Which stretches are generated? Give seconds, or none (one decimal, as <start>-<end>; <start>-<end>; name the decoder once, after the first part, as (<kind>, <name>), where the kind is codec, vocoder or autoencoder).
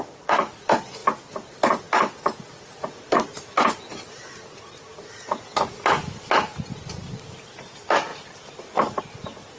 none